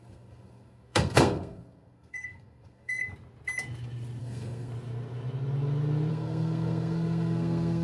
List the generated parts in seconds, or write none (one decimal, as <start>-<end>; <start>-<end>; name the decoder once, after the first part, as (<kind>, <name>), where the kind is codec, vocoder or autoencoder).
0.0-3.0 (codec, SNAC); 4.2-4.7; 6.1-7.8